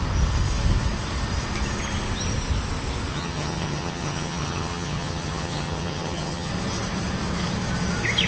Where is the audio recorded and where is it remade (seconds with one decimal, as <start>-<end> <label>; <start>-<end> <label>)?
0.0-3.1 recorded; 3.1-6.5 remade; 6.5-8.3 recorded